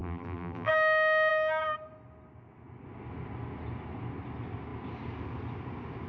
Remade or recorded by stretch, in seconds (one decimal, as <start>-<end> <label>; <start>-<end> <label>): 0.0-0.7 remade; 0.7-6.1 recorded